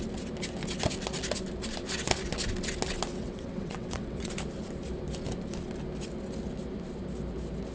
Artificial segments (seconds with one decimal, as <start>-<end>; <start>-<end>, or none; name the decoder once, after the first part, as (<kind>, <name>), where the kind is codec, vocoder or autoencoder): 3.1-4.3 (vocoder, WaveNeXt)